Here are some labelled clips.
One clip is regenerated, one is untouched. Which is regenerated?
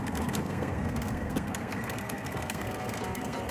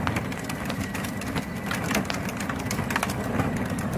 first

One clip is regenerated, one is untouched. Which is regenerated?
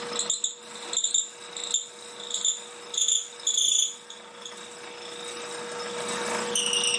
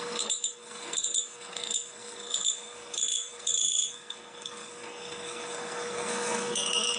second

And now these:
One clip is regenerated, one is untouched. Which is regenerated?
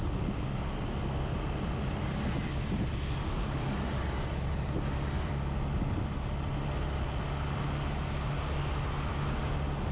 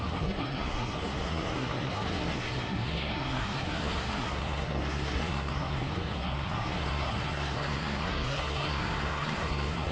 second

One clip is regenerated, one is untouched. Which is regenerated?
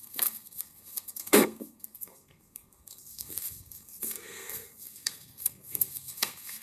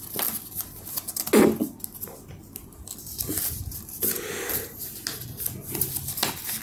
first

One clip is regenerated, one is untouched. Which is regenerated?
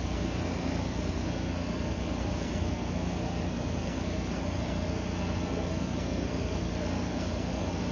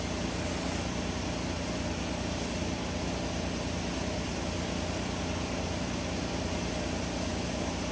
first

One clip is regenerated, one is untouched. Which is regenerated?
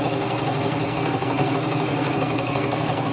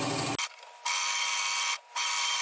first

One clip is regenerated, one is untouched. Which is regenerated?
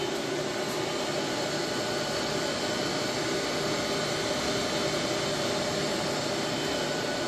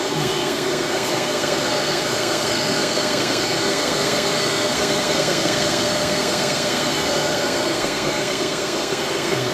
second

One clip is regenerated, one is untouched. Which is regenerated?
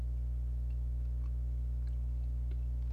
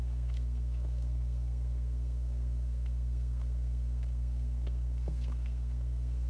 second